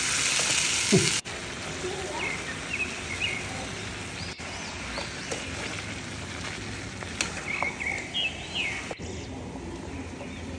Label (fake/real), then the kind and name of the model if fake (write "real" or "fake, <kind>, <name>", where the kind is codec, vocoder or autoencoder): real